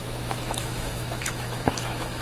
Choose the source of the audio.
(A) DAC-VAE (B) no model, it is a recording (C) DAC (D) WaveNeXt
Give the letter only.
A